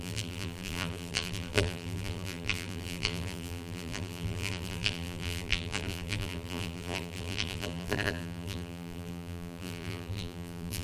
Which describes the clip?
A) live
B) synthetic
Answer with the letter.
B